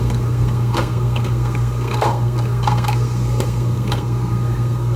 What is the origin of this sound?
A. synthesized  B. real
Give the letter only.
A